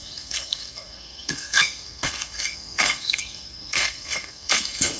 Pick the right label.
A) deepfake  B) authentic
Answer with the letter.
A